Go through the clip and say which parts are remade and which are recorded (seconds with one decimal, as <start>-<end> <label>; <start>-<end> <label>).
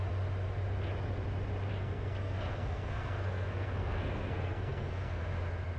0.0-1.7 recorded; 1.7-5.2 remade; 5.2-5.8 recorded